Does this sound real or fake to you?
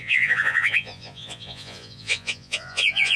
fake